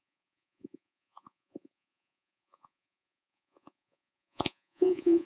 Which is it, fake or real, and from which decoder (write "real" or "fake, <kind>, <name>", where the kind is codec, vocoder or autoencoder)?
fake, vocoder, Vocos